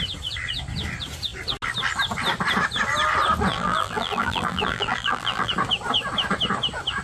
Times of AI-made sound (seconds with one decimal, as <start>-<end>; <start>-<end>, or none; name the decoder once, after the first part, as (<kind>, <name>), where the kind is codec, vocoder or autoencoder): 3.5-5.5 (vocoder, BigVGAN v2)